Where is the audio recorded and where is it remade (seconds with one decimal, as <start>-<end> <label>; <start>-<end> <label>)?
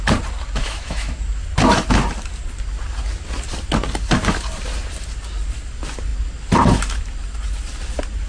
0.0-0.6 recorded; 0.6-1.2 remade; 1.2-8.3 recorded